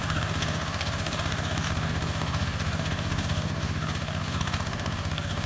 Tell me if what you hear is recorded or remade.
remade